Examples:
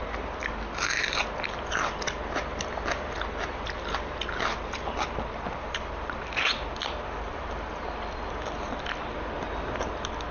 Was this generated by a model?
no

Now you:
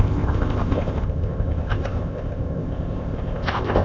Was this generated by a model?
yes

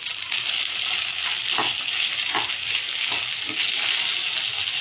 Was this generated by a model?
no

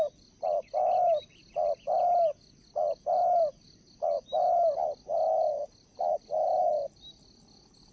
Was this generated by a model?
no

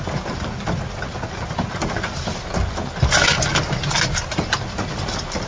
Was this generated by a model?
no